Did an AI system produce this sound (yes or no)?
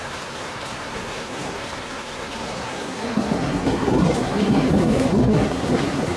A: yes